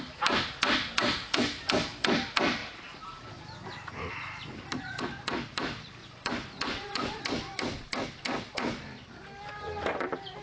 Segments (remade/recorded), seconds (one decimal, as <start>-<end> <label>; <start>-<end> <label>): 0.0-6.0 recorded; 6.0-7.2 remade; 7.2-10.4 recorded